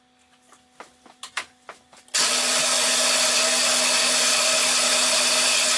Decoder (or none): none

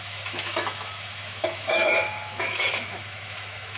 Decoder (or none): autoencoder, DAC-VAE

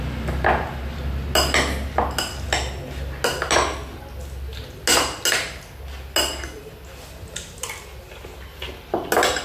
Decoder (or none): none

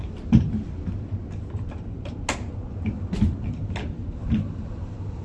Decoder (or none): none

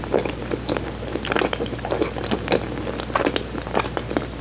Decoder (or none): none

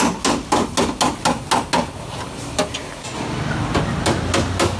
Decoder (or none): none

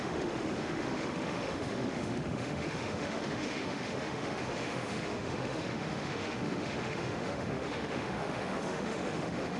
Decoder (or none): autoencoder, DAC-VAE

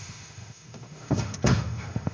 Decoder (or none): autoencoder, DAC-VAE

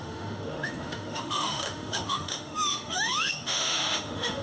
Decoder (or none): autoencoder, DAC-VAE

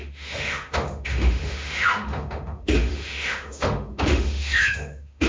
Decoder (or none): autoencoder, DAC-VAE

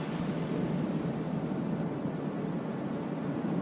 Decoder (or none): none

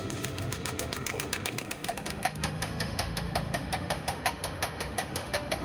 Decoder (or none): autoencoder, DAC-VAE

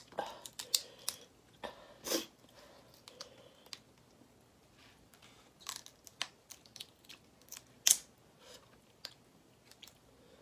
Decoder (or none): none